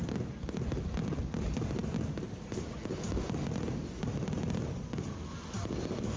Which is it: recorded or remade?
recorded